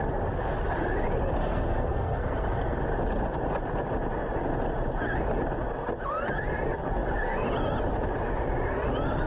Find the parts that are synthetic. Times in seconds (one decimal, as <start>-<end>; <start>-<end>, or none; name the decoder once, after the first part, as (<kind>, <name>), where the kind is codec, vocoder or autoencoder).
1.4-2.8 (codec, SNAC)